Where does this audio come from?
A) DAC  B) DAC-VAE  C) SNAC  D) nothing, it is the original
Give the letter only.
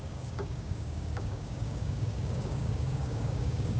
A